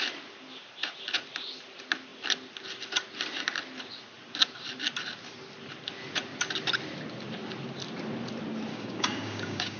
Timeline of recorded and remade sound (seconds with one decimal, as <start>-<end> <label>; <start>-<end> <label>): 0.0-8.7 recorded; 8.7-9.8 remade

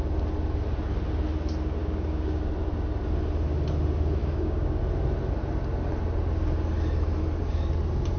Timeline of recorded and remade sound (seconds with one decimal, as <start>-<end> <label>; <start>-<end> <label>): 0.0-1.8 recorded; 1.8-2.4 remade; 2.4-4.2 recorded; 4.2-4.8 remade; 4.8-8.2 recorded